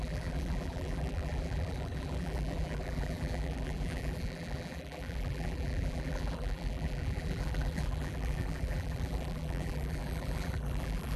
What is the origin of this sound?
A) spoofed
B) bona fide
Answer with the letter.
A